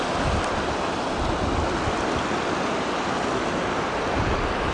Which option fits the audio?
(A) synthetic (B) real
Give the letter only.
B